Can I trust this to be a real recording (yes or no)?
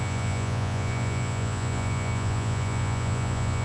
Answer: no